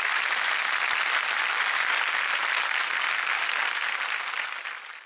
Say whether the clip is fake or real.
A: real